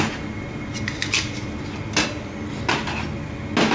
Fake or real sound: real